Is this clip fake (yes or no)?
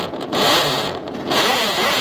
yes